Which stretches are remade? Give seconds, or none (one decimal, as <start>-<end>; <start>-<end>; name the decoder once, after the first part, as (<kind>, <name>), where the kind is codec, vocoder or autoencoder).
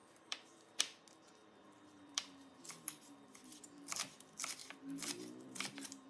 0.0-0.8 (vocoder, BigVGAN v2); 1.4-4.0; 4.6-6.1